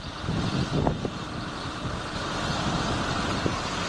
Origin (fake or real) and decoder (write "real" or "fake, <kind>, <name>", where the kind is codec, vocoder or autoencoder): real